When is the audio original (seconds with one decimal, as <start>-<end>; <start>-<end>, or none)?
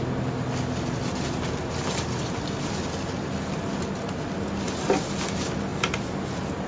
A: 0.0-6.7